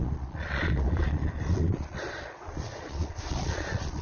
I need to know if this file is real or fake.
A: fake